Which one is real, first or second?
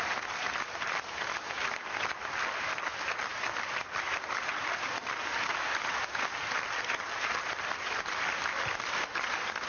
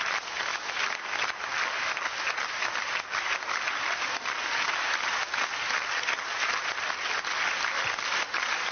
second